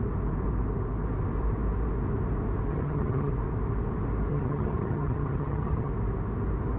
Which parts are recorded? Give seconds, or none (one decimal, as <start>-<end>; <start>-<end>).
0.0-2.7; 3.3-4.3; 5.9-6.8